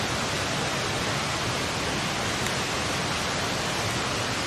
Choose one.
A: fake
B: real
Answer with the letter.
B